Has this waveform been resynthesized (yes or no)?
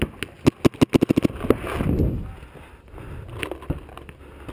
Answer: no